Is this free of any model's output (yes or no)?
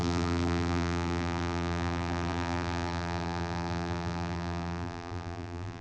no